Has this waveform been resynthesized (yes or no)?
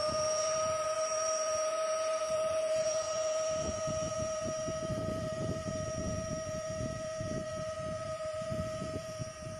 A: yes